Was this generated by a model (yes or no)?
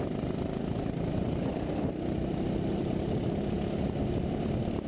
no